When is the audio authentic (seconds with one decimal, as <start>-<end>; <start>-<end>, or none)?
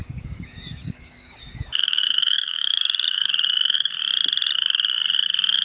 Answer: 3.3-5.6